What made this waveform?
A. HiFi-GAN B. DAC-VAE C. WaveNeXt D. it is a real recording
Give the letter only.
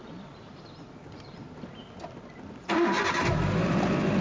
D